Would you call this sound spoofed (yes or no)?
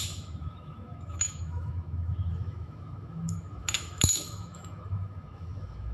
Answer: yes